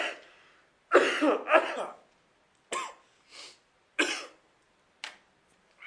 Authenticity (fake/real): real